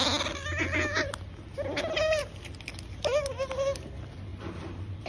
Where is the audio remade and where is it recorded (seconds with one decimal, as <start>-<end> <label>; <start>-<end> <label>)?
0.0-4.3 recorded; 4.3-5.1 remade